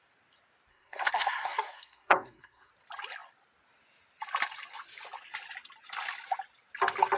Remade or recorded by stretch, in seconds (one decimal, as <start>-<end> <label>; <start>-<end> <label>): 0.0-0.7 recorded; 0.7-2.7 remade; 2.7-7.2 recorded